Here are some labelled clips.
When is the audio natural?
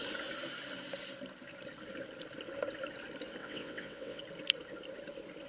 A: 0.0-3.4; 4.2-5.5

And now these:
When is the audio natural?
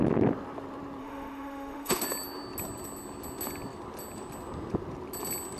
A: 0.0-1.0; 2.0-5.6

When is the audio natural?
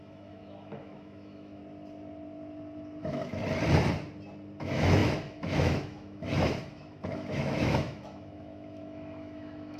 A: 1.6-3.0; 3.4-4.6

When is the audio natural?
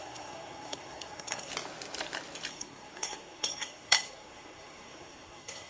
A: 1.5-2.5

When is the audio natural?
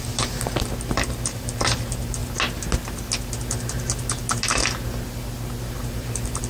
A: 2.2-3.4; 4.6-5.6